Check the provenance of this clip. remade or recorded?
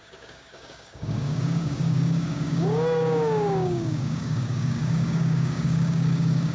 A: remade